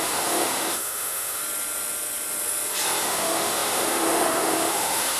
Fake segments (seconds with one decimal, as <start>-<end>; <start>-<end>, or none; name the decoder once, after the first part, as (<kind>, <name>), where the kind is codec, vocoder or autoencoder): 0.0-1.4 (autoencoder, DAC-VAE); 3.0-5.2